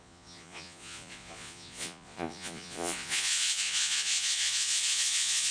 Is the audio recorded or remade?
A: remade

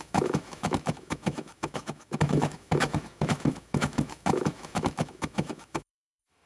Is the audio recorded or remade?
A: remade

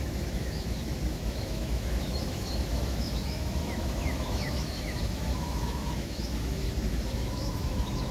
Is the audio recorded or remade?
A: remade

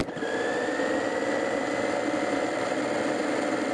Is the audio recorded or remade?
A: recorded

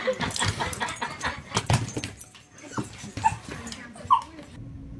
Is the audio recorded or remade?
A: recorded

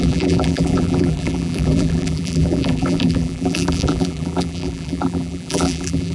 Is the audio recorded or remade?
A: remade